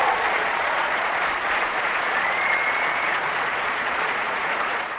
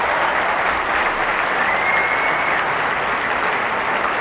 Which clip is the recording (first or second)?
second